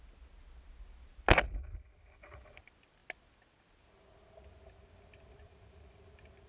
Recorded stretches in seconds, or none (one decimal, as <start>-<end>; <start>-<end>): 0.0-6.5